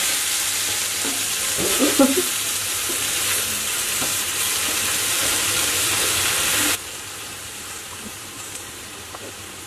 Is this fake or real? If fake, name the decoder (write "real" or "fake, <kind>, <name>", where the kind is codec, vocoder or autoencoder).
fake, vocoder, BigVGAN v2